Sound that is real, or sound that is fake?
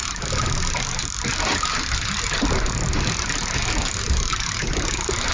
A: real